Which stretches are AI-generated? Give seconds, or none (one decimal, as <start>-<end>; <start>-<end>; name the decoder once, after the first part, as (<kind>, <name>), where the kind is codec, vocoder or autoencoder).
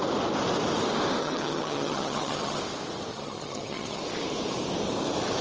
1.2-2.6 (vocoder, HiFi-GAN); 3.1-4.0